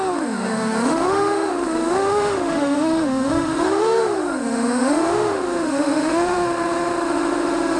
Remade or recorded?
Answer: remade